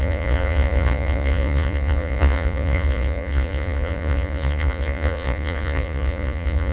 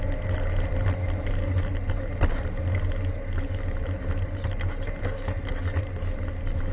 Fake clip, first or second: first